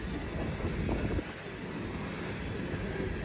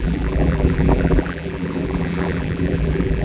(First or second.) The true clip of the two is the first